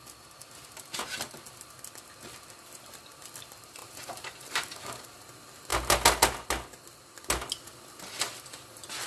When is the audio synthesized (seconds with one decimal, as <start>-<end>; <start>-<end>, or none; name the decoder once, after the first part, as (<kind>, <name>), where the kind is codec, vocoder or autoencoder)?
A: 3.8-5.3 (vocoder, BigVGAN v2)